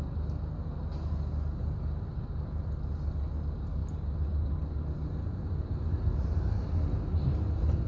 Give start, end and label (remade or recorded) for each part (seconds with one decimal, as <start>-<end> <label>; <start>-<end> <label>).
0.0-7.9 recorded